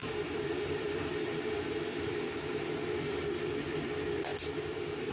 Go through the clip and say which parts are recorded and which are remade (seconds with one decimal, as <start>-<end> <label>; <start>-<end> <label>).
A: 0.0-5.1 remade